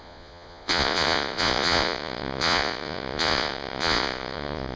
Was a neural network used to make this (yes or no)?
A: yes